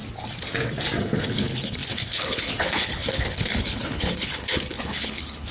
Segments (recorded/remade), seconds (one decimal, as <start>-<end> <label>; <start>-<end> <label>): 0.0-1.0 recorded; 1.0-5.5 remade